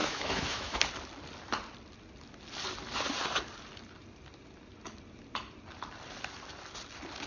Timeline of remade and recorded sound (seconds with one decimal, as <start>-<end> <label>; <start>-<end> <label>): 0.0-0.8 remade; 0.8-7.3 recorded